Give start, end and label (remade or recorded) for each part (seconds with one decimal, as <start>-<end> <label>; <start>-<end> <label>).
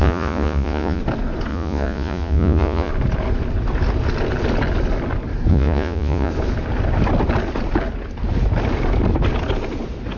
0.0-1.0 remade; 1.0-1.5 recorded; 1.5-2.9 remade; 2.9-5.5 recorded; 5.5-6.3 remade; 6.3-10.2 recorded